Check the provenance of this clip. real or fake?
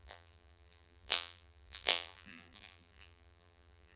fake